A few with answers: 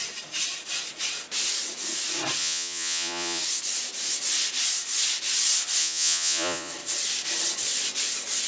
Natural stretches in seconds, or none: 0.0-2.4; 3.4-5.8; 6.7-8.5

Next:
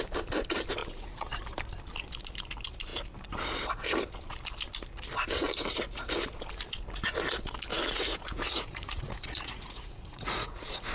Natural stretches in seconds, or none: 0.0-0.8; 1.4-7.7